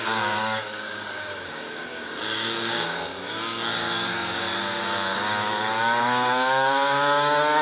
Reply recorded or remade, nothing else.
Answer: remade